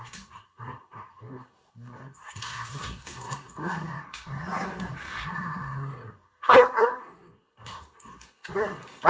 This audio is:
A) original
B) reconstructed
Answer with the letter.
B